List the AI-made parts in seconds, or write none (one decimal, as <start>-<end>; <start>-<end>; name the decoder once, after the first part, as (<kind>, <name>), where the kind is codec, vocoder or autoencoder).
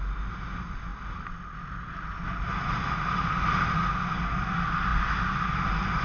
none